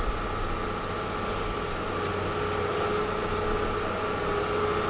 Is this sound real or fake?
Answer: real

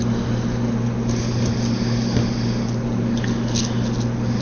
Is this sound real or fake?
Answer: real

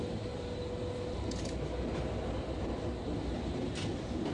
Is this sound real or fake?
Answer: real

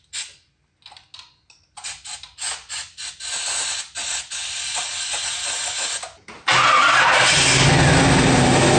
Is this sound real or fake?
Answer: real